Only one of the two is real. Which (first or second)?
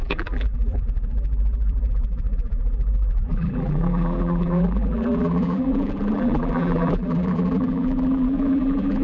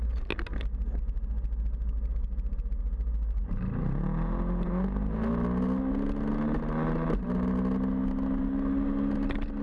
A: second